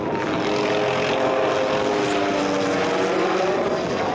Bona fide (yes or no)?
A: yes